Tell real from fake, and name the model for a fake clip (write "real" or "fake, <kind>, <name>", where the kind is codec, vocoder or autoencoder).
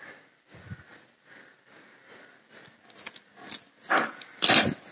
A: real